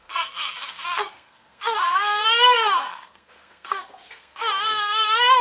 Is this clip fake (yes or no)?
yes